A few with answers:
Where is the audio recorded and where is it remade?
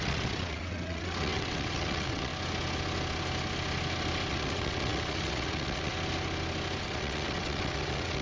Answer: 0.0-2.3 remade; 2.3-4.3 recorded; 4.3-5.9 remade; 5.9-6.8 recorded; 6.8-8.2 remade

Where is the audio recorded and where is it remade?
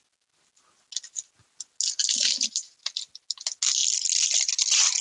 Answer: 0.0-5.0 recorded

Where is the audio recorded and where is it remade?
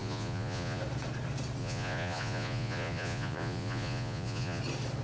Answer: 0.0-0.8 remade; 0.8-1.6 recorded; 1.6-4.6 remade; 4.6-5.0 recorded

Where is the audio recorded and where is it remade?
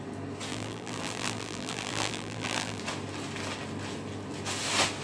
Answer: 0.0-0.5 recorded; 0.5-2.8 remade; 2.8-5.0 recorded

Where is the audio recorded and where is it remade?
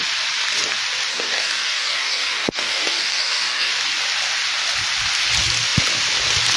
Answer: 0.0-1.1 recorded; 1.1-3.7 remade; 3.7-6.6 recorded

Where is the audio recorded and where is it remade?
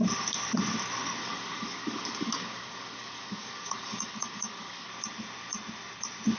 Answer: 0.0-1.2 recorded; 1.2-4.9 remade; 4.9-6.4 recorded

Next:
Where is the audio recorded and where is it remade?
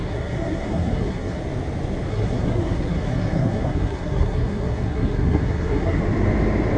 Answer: 0.0-1.4 remade; 1.4-2.1 recorded; 2.1-6.0 remade; 6.0-6.8 recorded